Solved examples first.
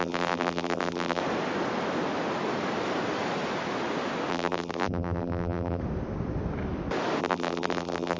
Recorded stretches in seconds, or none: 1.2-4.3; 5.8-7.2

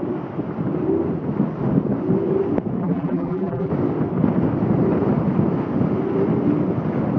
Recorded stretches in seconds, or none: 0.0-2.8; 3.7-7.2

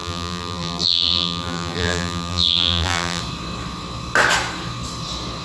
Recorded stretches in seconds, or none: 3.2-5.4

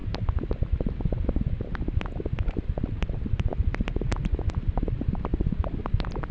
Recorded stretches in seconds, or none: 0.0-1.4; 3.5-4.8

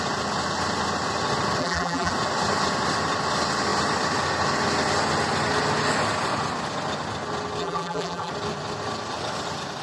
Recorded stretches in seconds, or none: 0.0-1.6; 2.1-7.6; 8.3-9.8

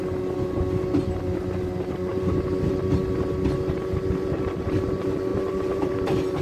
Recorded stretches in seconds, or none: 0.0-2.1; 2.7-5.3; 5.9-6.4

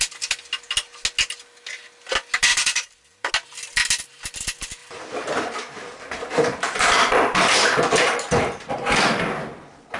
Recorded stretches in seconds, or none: 0.0-2.5; 3.3-4.8; 9.2-10.0

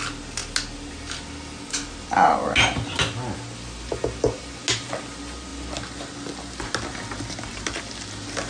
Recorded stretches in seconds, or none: 0.0-8.5